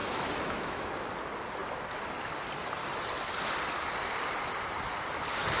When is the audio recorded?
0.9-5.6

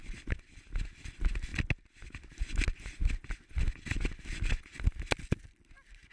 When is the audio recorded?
0.0-6.1

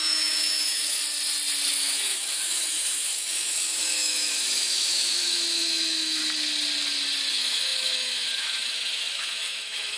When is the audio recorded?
1.0-1.7; 6.2-7.3